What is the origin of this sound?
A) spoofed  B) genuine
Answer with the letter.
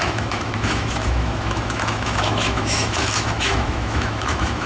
A